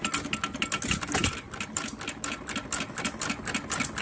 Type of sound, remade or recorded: recorded